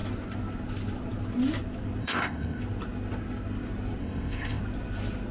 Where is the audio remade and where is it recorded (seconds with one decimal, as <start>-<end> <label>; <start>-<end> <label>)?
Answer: 0.0-2.0 recorded; 2.0-2.6 remade; 2.6-4.0 recorded; 4.0-4.6 remade; 4.6-5.3 recorded